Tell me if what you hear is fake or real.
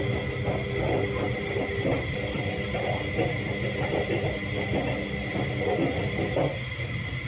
real